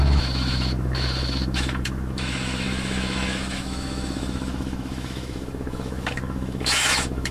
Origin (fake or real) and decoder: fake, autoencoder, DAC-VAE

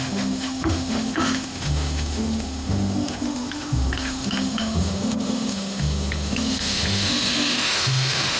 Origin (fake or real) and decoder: fake, autoencoder, DAC-VAE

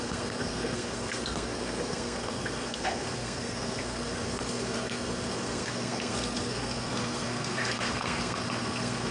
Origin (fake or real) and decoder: fake, codec, SNAC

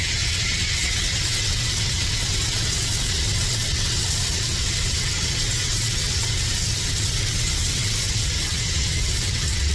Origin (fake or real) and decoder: fake, vocoder, WaveNeXt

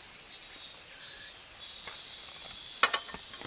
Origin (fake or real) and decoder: real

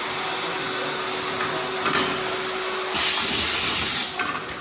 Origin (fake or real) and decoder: real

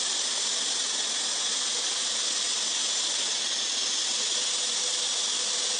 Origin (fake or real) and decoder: real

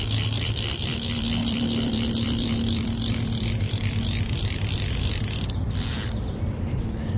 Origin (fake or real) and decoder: fake, vocoder, BigVGAN v2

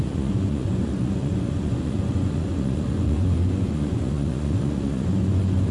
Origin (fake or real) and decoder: fake, vocoder, Vocos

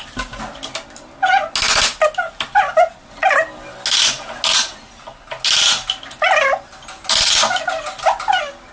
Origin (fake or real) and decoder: real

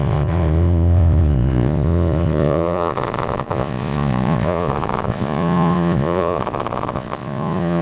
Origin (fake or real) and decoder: fake, vocoder, Vocos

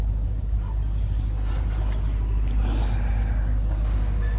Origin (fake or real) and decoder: real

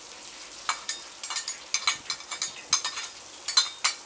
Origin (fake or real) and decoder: real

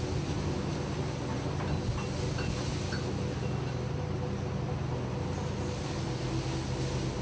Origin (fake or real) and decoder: real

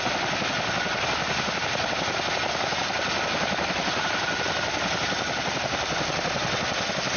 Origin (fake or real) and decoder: real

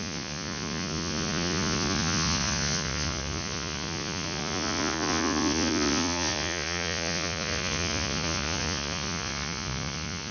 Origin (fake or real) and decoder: fake, vocoder, Vocos